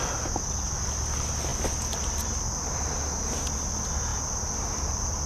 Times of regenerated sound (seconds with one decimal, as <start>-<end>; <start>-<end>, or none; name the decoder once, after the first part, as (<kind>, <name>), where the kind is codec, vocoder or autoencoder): none